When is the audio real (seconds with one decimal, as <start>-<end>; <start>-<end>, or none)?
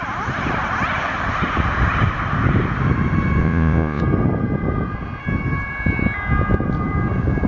0.0-3.4; 4.0-7.5